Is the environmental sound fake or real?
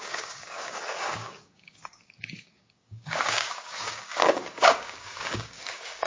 fake